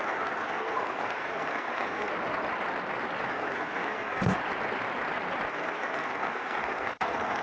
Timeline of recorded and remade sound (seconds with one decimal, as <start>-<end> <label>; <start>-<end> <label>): 0.0-2.1 remade; 2.1-3.3 recorded; 3.3-4.4 remade; 4.4-5.5 recorded; 5.5-7.4 remade